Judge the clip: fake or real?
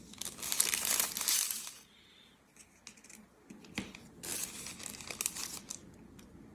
real